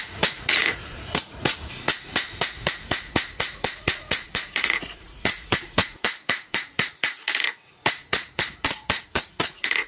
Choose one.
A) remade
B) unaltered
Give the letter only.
A